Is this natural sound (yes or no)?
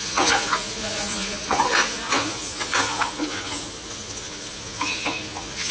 no